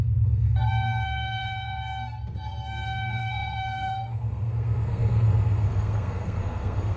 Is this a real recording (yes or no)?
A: no